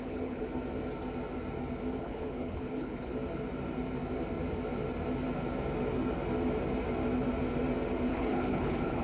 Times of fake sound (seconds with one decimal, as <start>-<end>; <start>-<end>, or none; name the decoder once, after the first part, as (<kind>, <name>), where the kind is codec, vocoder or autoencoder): 0.0-0.4 (codec, HILCodec); 2.0-3.1; 8.1-9.0